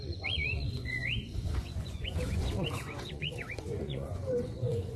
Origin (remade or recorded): remade